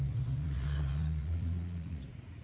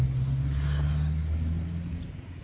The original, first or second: second